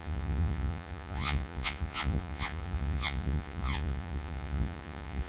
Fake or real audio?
fake